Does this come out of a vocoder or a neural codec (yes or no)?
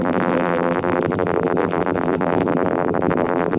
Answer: yes